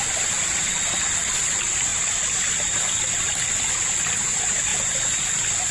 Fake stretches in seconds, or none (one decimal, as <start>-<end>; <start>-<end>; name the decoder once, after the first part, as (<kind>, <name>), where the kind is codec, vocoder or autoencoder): none